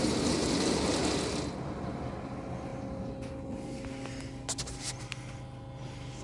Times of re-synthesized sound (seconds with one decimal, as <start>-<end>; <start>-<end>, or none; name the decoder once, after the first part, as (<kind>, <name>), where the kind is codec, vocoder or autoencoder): none